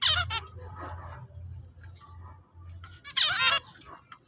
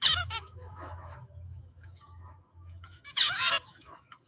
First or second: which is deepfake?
second